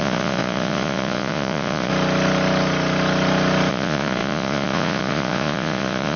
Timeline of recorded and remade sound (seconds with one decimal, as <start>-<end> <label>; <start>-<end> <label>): 0.0-1.9 remade; 1.9-3.7 recorded; 3.7-6.2 remade